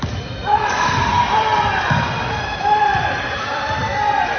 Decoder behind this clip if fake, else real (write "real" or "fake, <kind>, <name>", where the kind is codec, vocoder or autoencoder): fake, vocoder, BigVGAN v2